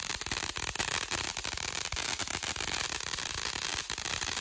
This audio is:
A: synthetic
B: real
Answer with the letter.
B